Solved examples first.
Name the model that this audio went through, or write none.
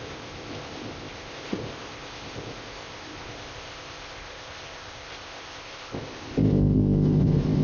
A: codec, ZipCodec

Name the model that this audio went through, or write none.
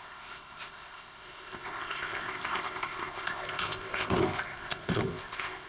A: codec, ZipCodec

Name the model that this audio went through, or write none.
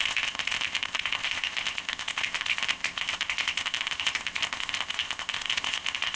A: codec, ZipCodec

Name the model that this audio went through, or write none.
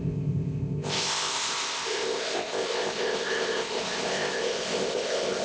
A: codec, ZipCodec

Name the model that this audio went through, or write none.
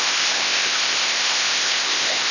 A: codec, ZipCodec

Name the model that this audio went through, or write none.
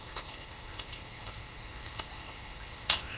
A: codec, ZipCodec